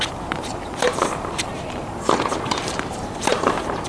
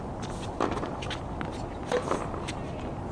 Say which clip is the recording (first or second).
second